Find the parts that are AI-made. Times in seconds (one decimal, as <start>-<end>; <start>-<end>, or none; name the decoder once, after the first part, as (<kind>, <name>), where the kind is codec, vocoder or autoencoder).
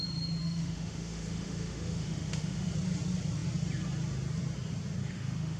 0.4-2.7 (autoencoder, DAC-VAE); 5.0-5.6